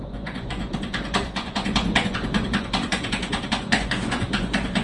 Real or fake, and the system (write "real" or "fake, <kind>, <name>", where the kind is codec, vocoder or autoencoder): fake, vocoder, Vocos